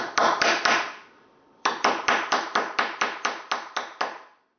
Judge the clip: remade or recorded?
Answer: recorded